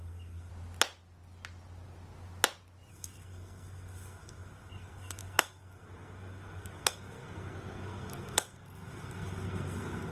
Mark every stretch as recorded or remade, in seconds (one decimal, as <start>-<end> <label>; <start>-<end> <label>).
0.0-0.5 remade; 0.5-2.9 recorded; 2.9-10.1 remade